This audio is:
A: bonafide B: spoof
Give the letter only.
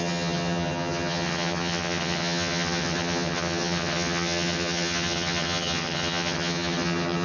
B